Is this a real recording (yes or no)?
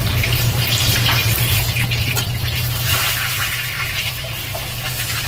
no